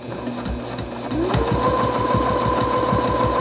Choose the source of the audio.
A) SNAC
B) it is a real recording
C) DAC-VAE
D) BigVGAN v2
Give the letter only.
B